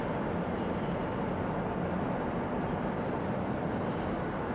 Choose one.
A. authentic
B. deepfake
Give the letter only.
A